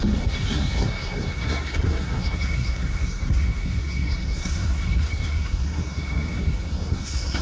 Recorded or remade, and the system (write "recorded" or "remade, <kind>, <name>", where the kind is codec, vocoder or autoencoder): remade, codec, SNAC